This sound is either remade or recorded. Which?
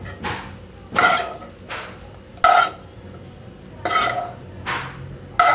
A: recorded